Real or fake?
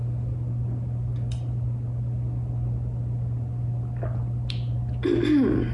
real